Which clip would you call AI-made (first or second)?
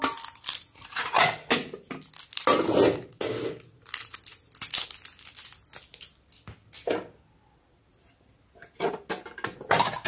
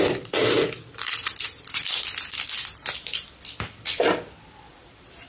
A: second